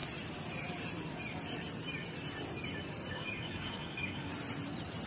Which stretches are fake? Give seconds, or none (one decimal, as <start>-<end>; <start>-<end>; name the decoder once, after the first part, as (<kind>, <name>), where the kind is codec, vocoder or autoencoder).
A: 3.1-4.3 (codec, DAC)

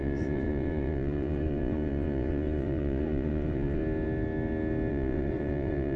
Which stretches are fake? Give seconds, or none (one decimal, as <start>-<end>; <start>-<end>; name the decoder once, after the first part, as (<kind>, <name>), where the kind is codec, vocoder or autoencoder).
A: 0.0-3.8 (vocoder, Vocos); 4.9-6.0

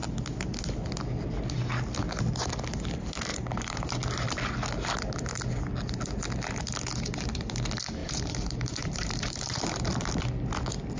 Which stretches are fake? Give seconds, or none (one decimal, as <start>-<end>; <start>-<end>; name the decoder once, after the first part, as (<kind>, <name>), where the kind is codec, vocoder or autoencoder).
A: 3.3-3.9 (vocoder, BigVGAN v2); 8.0-10.1

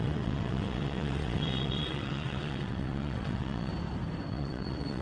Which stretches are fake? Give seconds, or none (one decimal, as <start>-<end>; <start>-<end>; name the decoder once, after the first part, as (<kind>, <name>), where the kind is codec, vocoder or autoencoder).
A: 0.0-3.7 (vocoder, WaveNeXt); 4.3-5.0

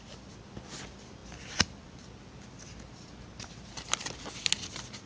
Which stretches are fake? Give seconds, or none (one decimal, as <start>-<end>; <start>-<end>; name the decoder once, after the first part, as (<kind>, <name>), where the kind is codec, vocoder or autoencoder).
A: none

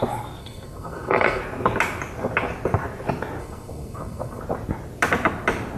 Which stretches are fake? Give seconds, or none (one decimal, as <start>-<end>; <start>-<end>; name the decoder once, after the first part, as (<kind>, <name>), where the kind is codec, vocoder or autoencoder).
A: 0.4-1.4 (codec, SNAC); 3.4-4.4

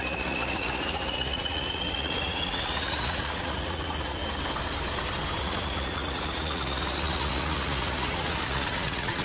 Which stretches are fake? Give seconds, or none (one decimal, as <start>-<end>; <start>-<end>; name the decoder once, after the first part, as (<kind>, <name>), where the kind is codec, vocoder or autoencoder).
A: 0.0-4.2 (vocoder, Vocos); 5.4-9.2